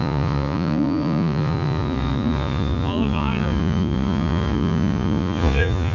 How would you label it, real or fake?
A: fake